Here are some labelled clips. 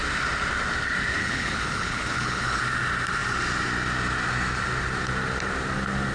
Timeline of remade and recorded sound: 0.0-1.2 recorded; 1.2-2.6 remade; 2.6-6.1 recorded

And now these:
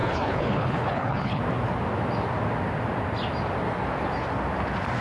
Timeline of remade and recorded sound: 0.0-1.4 remade; 1.4-5.0 recorded

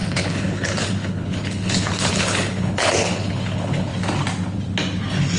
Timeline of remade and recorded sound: 0.0-3.9 remade; 3.9-5.4 recorded

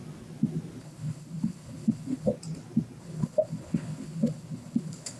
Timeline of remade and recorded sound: 0.0-0.8 recorded; 0.8-2.3 remade; 2.3-3.0 recorded; 3.0-5.2 remade

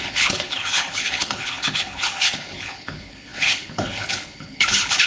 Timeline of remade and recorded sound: 0.0-5.1 remade

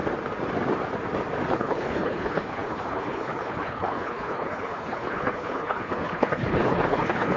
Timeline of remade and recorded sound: 0.0-1.5 recorded; 1.5-7.4 remade

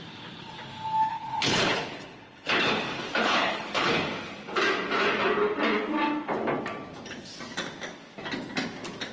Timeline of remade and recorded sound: 0.0-1.1 recorded; 1.1-2.7 remade; 2.7-3.2 recorded; 3.2-3.9 remade; 3.9-9.1 recorded

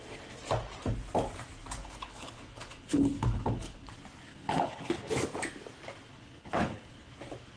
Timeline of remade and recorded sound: 0.0-1.8 recorded; 1.8-3.9 remade; 3.9-4.3 recorded; 4.3-5.1 remade; 5.1-6.1 recorded; 6.1-7.1 remade; 7.1-7.6 recorded